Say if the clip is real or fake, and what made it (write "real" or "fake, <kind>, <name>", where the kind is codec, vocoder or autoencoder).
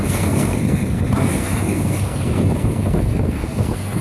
fake, codec, SNAC